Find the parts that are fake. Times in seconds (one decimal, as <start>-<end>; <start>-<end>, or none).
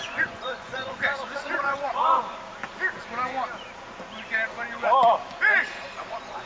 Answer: 0.0-2.2; 6.1-6.5